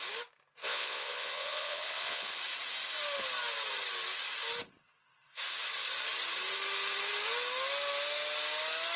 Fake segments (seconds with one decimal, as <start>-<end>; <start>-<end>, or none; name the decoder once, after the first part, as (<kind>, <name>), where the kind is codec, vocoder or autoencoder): 0.6-2.4 (vocoder, Vocos)